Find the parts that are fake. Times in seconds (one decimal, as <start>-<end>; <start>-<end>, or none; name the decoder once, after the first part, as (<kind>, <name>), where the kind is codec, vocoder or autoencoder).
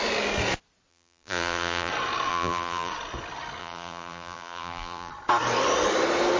0.9-1.9 (vocoder, BigVGAN v2); 2.3-2.9; 3.6-5.1